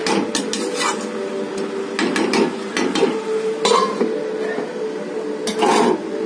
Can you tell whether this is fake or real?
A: real